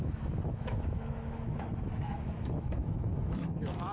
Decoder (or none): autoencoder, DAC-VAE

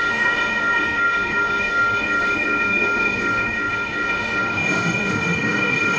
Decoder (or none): autoencoder, DAC-VAE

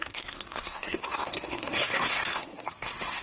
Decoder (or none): codec, SNAC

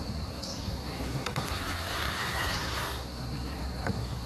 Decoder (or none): codec, SNAC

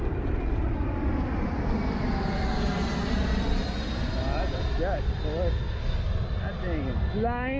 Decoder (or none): none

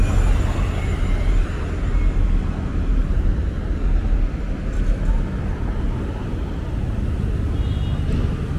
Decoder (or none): none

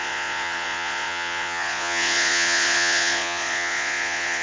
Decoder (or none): vocoder, Vocos